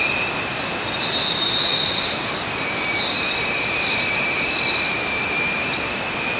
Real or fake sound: real